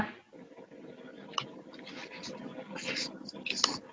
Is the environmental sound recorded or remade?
recorded